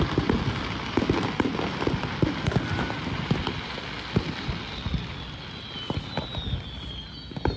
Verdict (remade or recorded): recorded